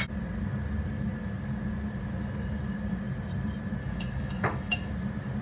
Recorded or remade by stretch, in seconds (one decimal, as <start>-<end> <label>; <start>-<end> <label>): 0.0-3.8 recorded; 3.8-4.9 remade; 4.9-5.4 recorded